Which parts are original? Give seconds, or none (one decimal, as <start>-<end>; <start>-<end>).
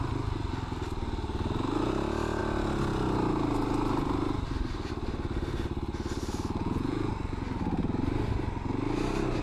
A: 0.0-6.6; 7.1-9.4